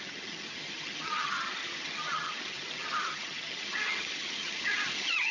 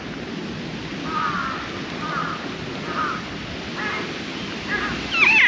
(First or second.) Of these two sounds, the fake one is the first